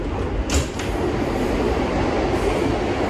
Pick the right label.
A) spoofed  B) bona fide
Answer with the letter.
B